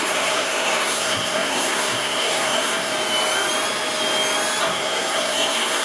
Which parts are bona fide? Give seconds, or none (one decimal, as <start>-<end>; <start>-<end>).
2.9-4.6